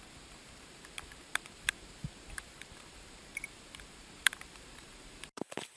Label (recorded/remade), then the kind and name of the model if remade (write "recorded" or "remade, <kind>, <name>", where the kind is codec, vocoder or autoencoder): remade, vocoder, BigVGAN v2